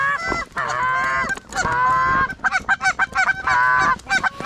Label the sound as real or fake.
real